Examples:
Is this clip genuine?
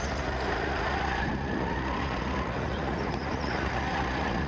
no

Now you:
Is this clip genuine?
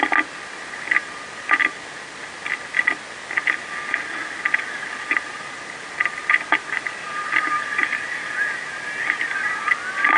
yes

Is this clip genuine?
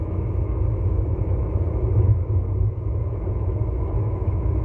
no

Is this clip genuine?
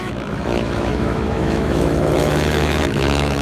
no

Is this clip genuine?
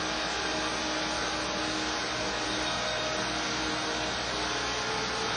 yes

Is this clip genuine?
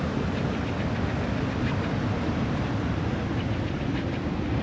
yes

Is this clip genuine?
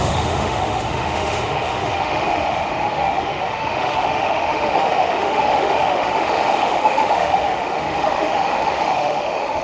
no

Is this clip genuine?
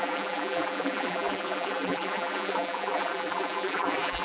no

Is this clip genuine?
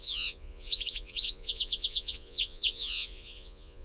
no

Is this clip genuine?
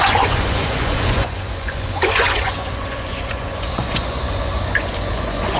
no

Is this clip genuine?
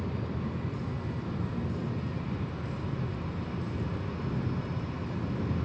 yes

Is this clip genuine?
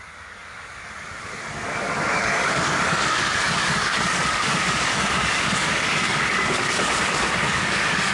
no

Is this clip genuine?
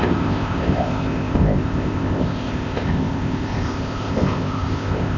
no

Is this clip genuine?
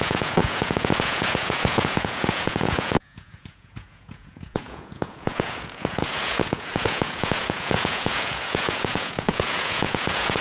no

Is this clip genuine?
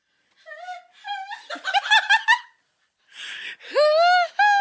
yes